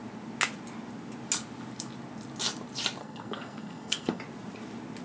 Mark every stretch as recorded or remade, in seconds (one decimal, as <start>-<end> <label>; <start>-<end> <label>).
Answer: 0.0-3.0 recorded; 3.0-4.2 remade; 4.2-5.0 recorded